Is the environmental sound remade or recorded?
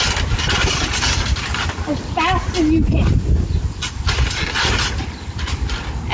recorded